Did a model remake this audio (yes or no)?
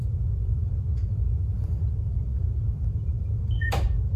yes